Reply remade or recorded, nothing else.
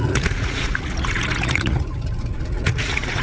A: remade